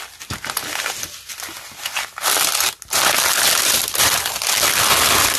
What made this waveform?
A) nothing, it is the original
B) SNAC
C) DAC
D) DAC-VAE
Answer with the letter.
A